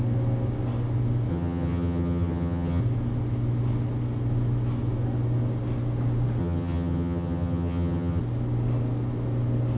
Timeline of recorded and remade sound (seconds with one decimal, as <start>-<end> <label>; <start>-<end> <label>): 0.0-1.3 recorded; 1.3-2.8 remade; 2.8-6.4 recorded; 6.4-8.2 remade; 8.2-9.8 recorded